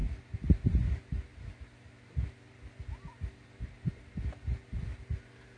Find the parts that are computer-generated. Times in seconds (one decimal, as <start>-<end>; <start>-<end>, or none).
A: none